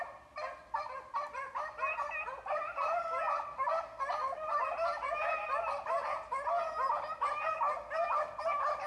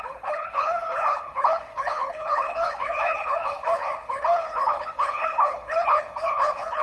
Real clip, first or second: first